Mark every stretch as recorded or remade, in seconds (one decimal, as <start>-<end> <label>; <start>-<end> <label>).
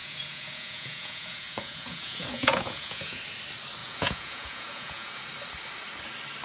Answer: 0.0-3.2 remade; 3.2-3.8 recorded; 3.8-5.2 remade; 5.2-6.4 recorded